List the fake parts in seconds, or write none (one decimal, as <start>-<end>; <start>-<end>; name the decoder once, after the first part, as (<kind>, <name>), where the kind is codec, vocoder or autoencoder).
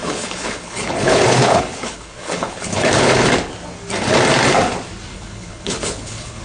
0.0-3.3 (codec, HILCodec); 5.1-6.4